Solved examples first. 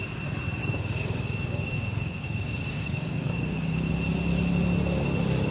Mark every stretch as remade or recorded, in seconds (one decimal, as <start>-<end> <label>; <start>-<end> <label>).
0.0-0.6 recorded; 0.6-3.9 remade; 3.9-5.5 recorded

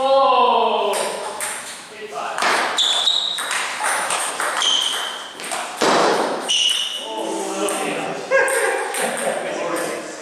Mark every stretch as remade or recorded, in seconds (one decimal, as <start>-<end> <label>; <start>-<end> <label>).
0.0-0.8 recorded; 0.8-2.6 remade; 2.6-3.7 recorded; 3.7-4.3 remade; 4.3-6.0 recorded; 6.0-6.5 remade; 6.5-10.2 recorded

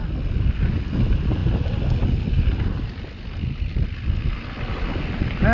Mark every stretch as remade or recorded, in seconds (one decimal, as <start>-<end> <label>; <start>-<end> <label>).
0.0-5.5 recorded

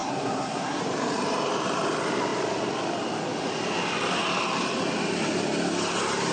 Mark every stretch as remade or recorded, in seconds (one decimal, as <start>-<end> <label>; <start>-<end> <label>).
0.0-0.8 remade; 0.8-6.3 recorded

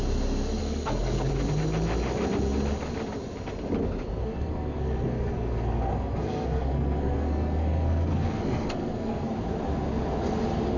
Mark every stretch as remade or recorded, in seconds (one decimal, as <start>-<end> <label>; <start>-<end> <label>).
0.0-0.6 recorded; 0.6-1.3 remade; 1.3-4.2 recorded; 4.2-9.3 remade; 9.3-10.8 recorded

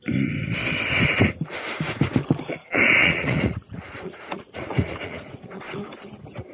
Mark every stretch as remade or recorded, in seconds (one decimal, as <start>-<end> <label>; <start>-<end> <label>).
0.0-3.0 recorded; 3.0-5.6 remade; 5.6-6.5 recorded

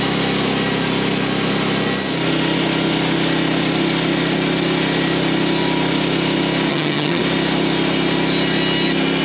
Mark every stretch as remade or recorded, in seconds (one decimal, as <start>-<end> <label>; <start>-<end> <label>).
0.0-6.7 recorded; 6.7-7.2 remade; 7.2-9.2 recorded